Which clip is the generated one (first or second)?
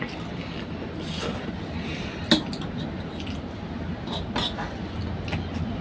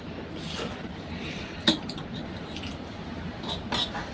second